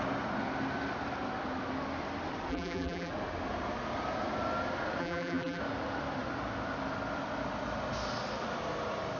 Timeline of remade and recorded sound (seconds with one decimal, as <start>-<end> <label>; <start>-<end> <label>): 0.0-2.5 recorded; 2.5-3.1 remade; 3.1-5.0 recorded; 5.0-5.6 remade; 5.6-9.2 recorded